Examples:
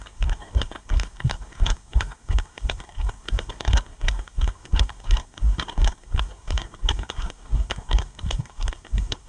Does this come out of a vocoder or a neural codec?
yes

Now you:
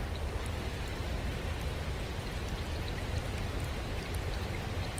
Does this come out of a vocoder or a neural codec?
no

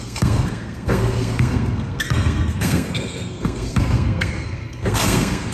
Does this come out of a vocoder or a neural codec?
yes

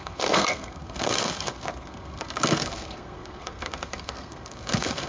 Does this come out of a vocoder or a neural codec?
yes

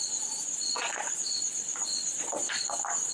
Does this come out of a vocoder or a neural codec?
yes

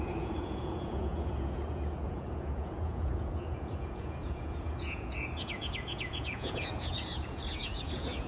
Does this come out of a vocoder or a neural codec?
yes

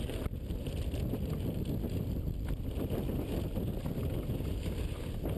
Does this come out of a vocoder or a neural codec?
no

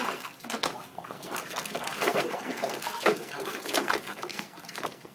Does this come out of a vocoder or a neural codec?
yes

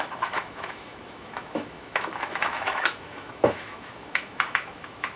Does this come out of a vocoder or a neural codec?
yes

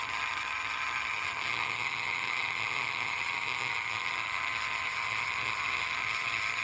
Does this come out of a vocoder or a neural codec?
yes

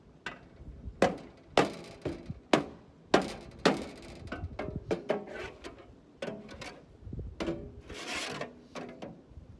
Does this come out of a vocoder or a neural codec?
no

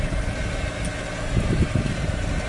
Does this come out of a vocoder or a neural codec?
no